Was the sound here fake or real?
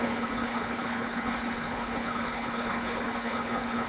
fake